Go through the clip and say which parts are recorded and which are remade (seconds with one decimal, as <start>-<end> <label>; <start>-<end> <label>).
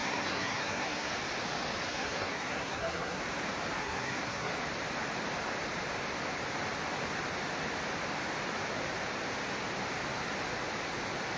0.0-1.1 remade; 1.1-1.9 recorded; 1.9-3.2 remade; 3.2-3.8 recorded; 3.8-4.5 remade; 4.5-11.4 recorded